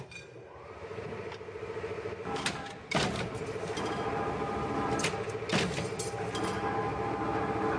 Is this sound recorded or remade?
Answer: recorded